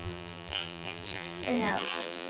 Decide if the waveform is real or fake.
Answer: fake